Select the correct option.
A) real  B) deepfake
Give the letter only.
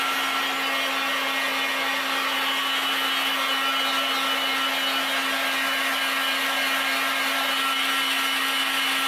A